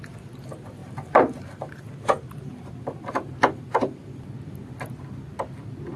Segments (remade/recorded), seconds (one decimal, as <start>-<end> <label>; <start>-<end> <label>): 0.0-0.8 recorded; 0.8-1.7 remade; 1.7-2.5 recorded; 2.5-4.1 remade; 4.1-6.0 recorded